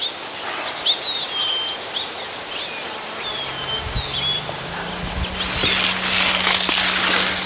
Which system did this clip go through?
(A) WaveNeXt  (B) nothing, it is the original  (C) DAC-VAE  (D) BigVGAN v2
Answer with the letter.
B